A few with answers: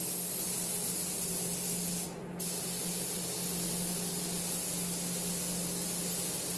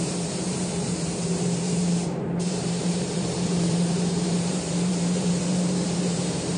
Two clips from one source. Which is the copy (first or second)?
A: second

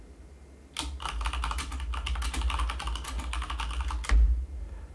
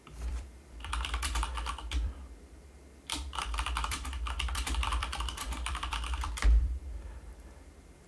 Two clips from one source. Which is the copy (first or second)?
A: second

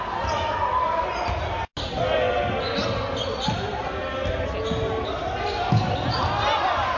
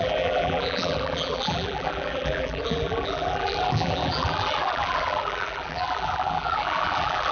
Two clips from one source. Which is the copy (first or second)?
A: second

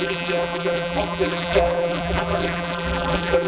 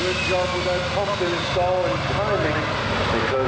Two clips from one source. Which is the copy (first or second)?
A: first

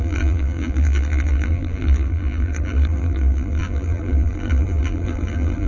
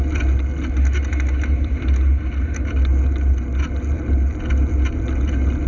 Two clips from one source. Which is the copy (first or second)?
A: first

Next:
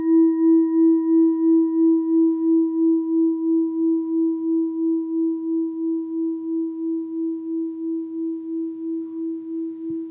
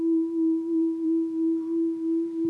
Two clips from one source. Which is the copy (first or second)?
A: second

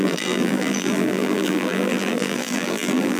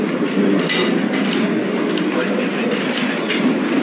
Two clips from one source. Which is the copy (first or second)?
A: first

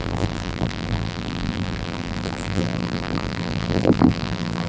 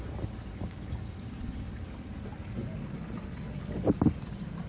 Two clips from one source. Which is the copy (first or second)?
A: first